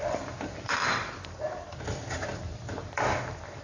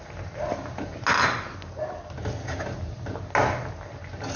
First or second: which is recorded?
second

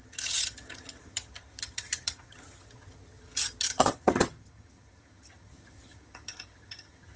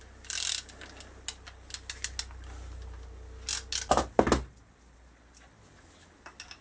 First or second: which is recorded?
second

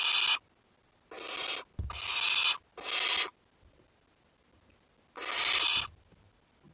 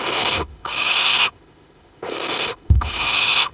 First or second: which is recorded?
first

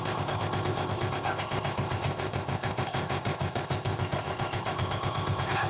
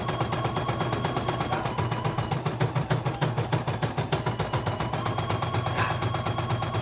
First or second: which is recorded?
second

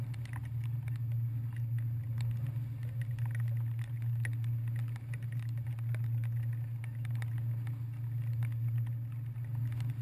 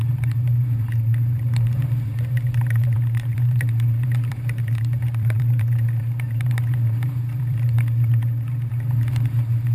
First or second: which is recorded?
first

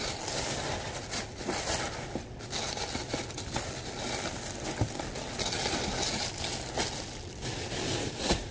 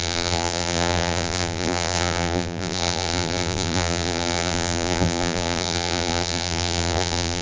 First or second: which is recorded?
first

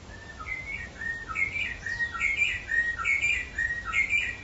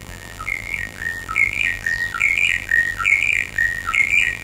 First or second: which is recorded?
first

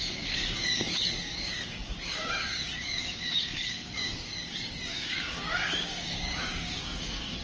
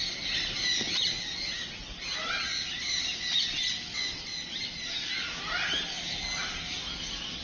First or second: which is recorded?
second